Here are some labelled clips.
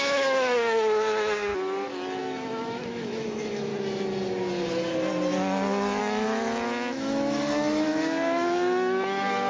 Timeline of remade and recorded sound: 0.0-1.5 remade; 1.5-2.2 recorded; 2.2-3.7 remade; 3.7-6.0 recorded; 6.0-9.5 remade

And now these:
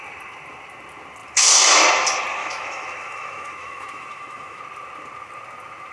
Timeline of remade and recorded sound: 0.0-2.4 recorded; 2.4-4.6 remade; 4.6-5.9 recorded

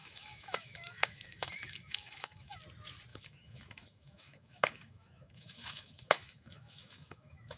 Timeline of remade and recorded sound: 0.0-2.6 remade; 2.6-3.1 recorded; 3.1-7.6 remade

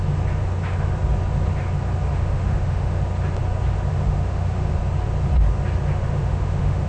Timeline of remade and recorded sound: 0.0-2.1 recorded; 2.1-3.0 remade; 3.0-3.9 recorded; 3.9-4.7 remade; 4.7-6.2 recorded; 6.2-6.9 remade